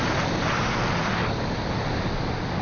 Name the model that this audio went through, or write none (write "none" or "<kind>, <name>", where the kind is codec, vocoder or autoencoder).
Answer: none